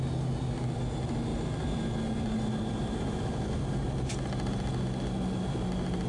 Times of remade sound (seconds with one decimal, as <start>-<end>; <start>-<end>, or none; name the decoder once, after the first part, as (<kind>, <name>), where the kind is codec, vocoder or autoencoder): 1.3-3.3 (vocoder, BigVGAN v2)